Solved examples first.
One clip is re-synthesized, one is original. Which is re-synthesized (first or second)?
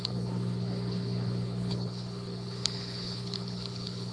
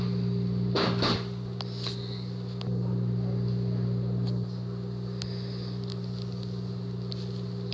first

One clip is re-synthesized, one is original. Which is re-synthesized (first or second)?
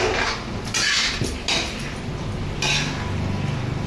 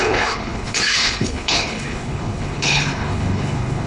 second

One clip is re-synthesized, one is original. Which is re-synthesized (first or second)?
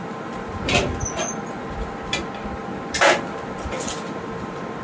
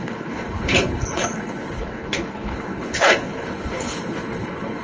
second